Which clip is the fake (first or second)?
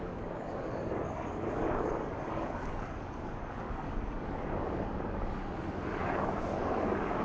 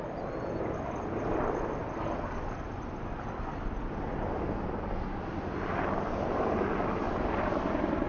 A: first